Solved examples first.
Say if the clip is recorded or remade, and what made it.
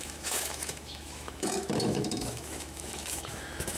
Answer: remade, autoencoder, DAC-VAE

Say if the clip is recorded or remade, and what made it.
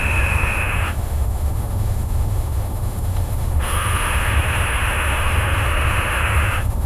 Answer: remade, autoencoder, DAC-VAE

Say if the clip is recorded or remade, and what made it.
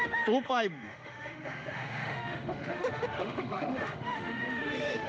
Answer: remade, autoencoder, DAC-VAE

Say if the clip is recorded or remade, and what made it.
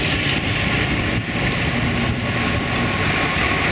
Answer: recorded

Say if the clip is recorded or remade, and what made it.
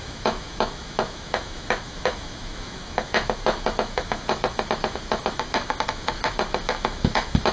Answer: remade, autoencoder, DAC-VAE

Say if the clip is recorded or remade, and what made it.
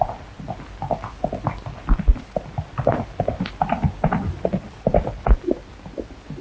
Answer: recorded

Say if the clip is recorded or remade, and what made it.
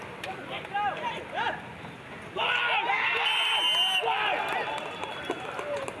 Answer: recorded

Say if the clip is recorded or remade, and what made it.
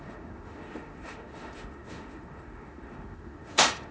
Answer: remade, autoencoder, DAC-VAE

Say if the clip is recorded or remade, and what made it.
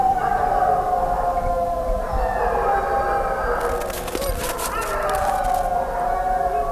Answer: recorded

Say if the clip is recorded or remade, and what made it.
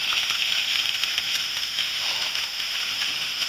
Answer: remade, autoencoder, DAC-VAE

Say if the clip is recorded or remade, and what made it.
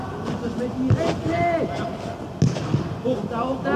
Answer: recorded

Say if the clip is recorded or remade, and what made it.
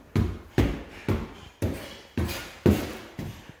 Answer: recorded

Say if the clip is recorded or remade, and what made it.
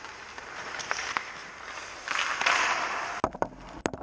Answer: recorded